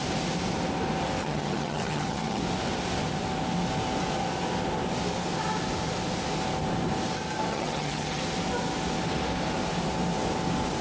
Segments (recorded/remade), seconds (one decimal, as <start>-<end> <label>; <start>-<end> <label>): 0.0-1.2 recorded; 1.2-2.4 remade; 2.4-7.5 recorded; 7.5-8.2 remade; 8.2-10.8 recorded